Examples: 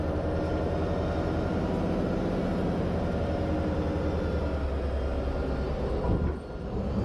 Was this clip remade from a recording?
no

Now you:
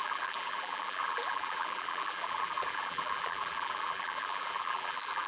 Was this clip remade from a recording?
yes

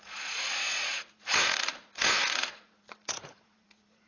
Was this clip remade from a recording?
yes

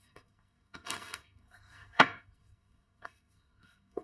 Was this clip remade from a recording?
yes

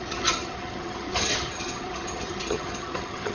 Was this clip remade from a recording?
yes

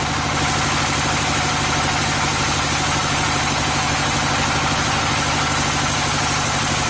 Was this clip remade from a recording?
no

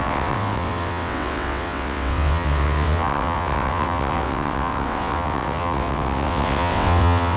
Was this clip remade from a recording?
yes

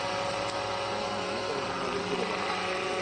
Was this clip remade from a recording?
no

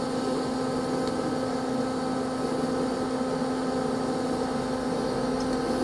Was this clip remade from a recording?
no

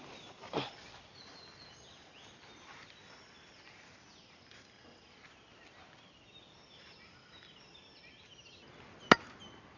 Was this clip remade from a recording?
no